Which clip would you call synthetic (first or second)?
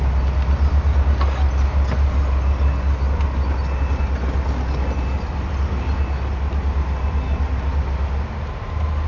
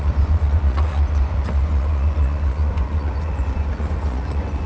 second